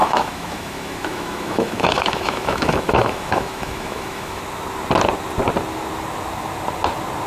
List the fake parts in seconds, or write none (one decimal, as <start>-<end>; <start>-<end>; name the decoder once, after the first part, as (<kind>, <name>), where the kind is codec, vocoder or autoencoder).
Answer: 0.0-4.4 (autoencoder, DAC-VAE)